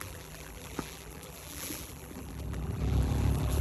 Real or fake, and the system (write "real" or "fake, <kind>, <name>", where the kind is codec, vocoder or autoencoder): fake, vocoder, BigVGAN v2